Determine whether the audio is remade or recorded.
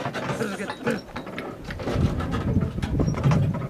recorded